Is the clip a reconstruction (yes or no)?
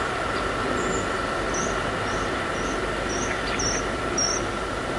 no